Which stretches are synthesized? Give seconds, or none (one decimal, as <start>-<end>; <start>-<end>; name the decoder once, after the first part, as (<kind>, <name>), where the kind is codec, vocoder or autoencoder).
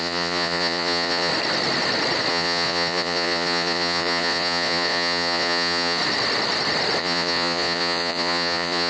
0.0-1.3 (vocoder, Vocos); 2.3-6.0; 7.0-8.9